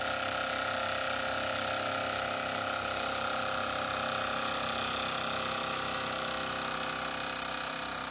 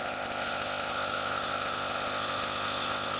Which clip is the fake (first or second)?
second